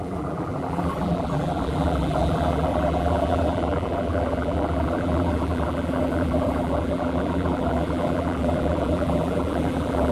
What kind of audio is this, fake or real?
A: fake